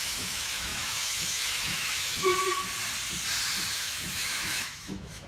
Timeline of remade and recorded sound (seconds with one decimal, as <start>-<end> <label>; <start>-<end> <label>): 0.0-2.3 remade; 2.3-3.7 recorded; 3.7-5.3 remade